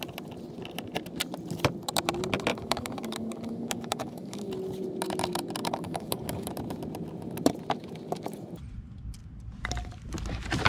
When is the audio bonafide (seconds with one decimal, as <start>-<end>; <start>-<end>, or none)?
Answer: 0.0-2.5; 4.5-5.6; 6.5-10.7